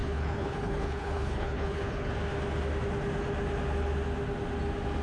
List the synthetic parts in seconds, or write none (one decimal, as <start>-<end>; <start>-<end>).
0.0-2.1